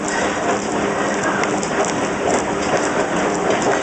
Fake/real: real